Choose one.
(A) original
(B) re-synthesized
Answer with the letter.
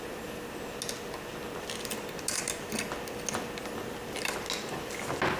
A